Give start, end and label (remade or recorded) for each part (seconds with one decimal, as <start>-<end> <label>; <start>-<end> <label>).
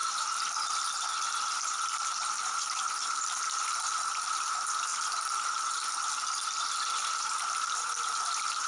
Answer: 0.0-8.7 recorded